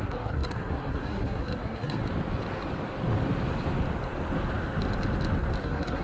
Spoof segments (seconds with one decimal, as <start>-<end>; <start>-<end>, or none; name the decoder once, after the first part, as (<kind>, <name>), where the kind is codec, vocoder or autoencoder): 0.0-2.0 (codec, SNAC); 5.6-6.0